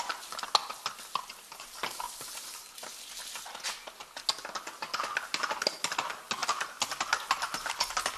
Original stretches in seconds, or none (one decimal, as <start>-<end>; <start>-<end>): 0.0-8.2